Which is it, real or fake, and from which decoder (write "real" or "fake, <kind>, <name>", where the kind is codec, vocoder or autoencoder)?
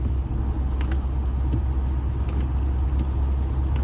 real